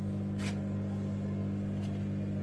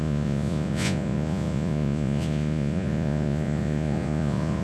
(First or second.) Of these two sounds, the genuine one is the first